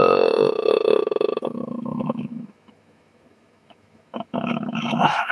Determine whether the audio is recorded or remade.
remade